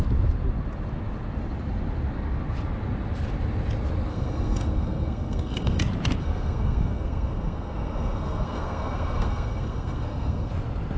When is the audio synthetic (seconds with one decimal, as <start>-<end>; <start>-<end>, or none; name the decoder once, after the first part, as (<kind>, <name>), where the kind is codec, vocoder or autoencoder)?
4.1-5.8 (codec, SNAC); 6.2-10.5